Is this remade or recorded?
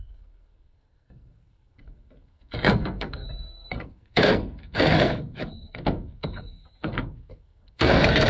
remade